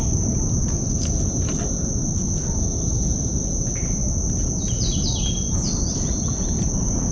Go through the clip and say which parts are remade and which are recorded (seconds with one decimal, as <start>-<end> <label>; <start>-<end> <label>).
0.0-7.1 recorded